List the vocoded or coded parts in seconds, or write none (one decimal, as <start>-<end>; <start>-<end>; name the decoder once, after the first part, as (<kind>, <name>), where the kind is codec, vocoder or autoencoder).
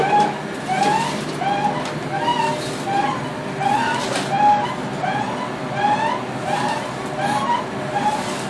none